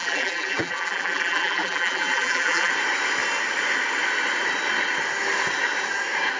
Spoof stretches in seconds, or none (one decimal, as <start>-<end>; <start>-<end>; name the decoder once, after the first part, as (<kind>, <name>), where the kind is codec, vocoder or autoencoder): 0.0-2.7 (vocoder, BigVGAN v2)